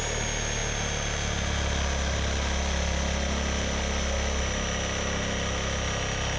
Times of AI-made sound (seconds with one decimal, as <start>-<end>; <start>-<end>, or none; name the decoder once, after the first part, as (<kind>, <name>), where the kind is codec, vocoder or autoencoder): none